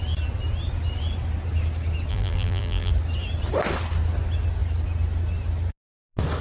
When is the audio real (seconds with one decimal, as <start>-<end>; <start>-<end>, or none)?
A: 0.0-2.1; 2.9-6.4